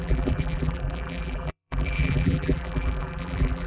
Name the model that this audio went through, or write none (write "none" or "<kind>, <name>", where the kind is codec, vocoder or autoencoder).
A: vocoder, BigVGAN v2